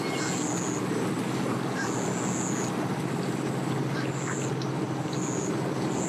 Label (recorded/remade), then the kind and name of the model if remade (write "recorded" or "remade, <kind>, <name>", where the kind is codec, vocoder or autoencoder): recorded